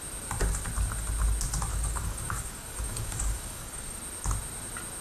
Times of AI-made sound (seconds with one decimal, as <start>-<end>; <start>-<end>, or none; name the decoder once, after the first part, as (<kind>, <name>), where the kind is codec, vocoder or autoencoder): 1.7-4.0 (codec, DAC)